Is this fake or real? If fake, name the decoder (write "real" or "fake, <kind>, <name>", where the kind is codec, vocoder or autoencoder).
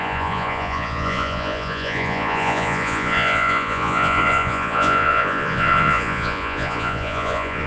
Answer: fake, vocoder, Vocos